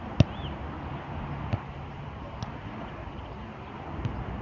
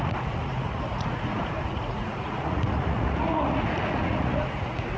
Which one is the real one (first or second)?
first